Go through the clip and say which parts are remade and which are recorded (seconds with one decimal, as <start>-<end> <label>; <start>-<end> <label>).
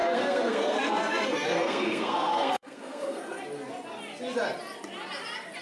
0.0-3.4 remade; 3.4-5.6 recorded